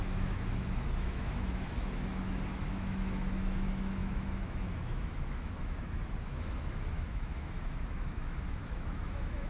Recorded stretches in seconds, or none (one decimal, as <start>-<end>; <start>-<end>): none

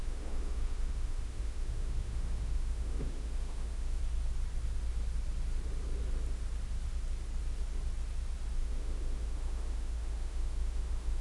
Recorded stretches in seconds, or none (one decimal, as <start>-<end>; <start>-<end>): 4.0-8.6

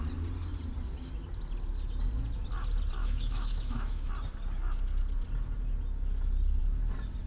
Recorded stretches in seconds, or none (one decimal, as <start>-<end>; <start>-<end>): 0.0-3.0; 4.1-7.3

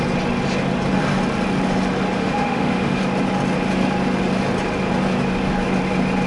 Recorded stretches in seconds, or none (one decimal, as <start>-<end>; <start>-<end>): 0.0-2.2; 3.0-6.3

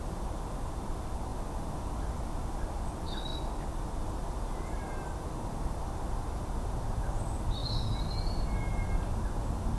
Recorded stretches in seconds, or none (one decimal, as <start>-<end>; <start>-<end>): 0.0-9.8

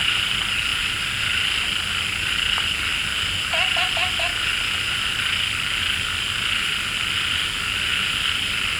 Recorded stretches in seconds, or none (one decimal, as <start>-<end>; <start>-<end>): 0.0-8.8